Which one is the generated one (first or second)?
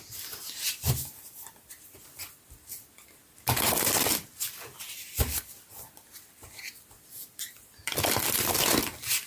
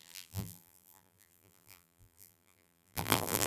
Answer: second